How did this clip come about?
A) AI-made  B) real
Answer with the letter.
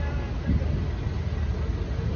B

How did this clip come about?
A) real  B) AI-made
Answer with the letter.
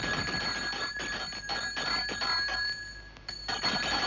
A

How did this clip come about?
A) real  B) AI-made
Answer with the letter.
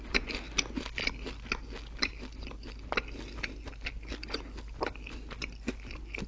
A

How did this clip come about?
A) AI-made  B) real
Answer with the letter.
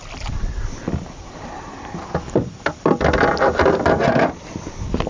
B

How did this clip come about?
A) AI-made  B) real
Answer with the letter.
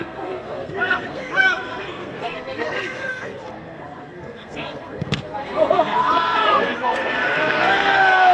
A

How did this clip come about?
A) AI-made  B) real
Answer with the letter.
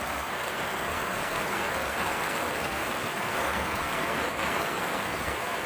A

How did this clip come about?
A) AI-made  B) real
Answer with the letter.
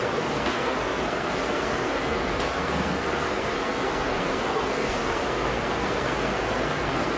A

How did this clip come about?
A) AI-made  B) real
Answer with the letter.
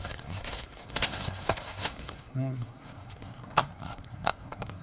A